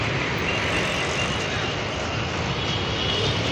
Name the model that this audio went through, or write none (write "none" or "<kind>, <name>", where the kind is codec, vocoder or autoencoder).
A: none